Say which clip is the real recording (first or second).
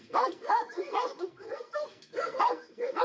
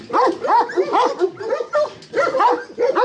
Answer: second